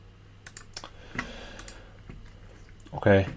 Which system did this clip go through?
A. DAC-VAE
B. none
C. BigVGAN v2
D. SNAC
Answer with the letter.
B